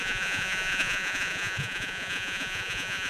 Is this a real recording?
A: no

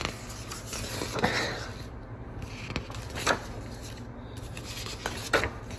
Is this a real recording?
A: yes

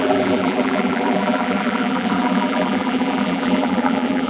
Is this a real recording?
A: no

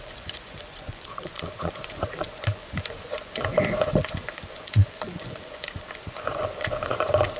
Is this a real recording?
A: no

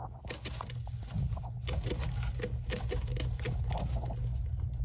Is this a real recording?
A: yes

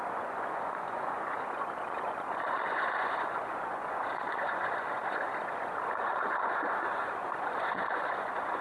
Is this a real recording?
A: no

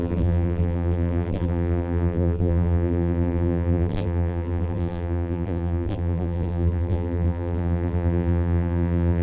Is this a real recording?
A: no